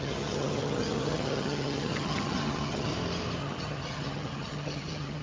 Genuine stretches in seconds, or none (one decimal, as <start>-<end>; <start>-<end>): 2.9-3.4